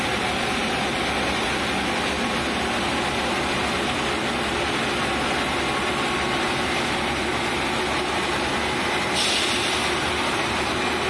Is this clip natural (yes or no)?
yes